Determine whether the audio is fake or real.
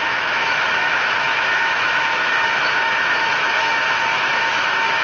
fake